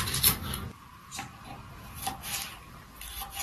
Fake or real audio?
real